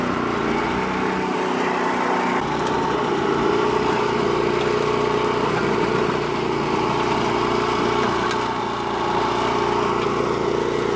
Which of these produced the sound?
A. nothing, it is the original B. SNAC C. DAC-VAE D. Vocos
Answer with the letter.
A